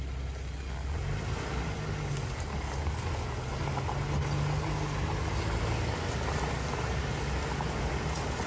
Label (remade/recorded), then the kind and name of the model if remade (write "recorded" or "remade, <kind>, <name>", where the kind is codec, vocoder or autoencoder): recorded